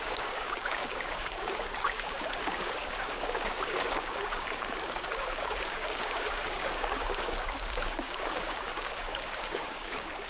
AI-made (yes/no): yes